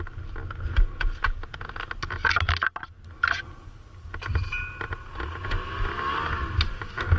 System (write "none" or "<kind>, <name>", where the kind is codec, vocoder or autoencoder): none